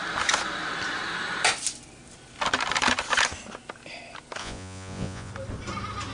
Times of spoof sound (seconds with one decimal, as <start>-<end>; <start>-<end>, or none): 4.4-5.3